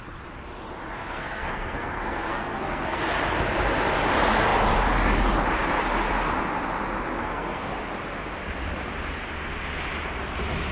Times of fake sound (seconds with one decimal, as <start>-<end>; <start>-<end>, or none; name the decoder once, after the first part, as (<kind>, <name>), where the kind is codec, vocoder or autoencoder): 1.0-3.0 (codec, SNAC); 7.2-7.7